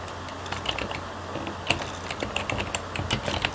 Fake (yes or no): no